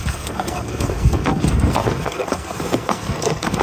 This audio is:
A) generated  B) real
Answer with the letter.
A